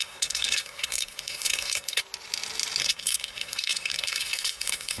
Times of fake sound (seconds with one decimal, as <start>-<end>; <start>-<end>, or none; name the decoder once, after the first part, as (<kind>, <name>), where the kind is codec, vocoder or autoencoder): 0.0-2.0 (codec, SNAC); 2.8-5.0